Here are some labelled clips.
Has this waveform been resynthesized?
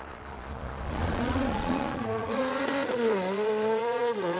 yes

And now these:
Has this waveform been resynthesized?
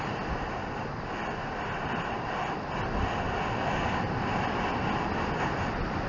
no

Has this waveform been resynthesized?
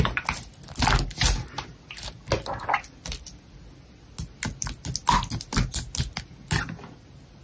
no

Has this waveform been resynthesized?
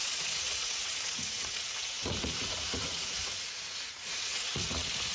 yes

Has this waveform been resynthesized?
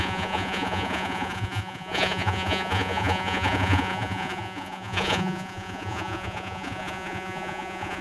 yes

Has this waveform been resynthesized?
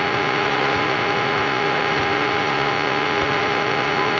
yes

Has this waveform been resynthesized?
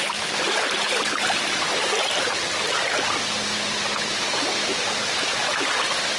no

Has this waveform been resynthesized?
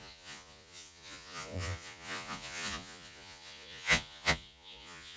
yes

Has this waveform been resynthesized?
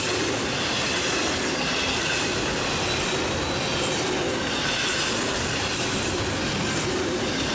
no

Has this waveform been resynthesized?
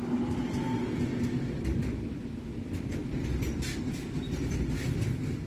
no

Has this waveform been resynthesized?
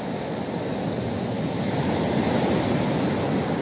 no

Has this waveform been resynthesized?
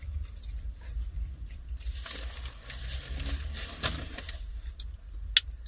no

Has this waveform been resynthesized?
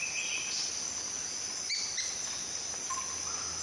no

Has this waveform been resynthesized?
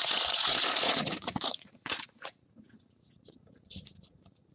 yes